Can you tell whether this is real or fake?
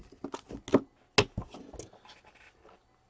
real